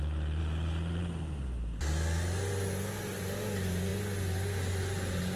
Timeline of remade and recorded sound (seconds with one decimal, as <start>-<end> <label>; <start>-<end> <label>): 0.0-5.4 recorded